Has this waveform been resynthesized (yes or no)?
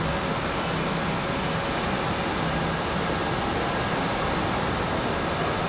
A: no